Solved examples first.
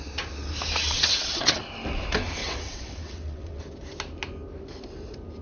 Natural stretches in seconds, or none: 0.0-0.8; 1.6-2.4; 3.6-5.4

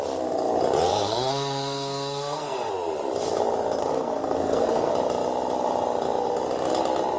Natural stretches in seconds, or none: 0.0-0.9; 2.7-3.8; 4.9-7.2

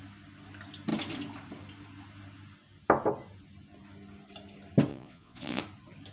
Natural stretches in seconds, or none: 0.0-4.9; 5.6-6.1

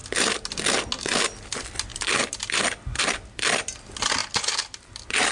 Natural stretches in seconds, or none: 0.0-5.3

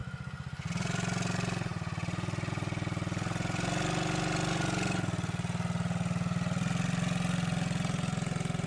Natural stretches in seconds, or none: 0.0-8.7